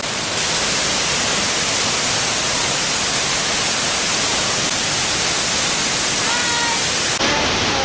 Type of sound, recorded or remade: recorded